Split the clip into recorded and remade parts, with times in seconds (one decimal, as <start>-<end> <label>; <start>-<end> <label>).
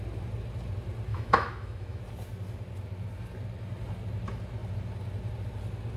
0.0-1.1 recorded; 1.1-2.0 remade; 2.0-6.0 recorded